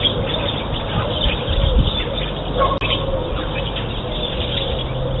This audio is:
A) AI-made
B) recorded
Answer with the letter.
B